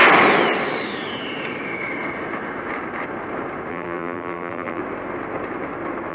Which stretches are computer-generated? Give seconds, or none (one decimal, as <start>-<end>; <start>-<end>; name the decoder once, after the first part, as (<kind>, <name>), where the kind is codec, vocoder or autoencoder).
3.7-4.8 (vocoder, BigVGAN v2)